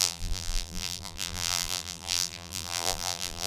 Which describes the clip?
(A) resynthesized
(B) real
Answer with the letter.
A